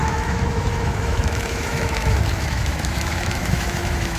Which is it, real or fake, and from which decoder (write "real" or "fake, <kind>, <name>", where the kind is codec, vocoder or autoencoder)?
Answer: fake, autoencoder, DAC-VAE